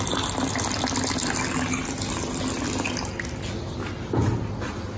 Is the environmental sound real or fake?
real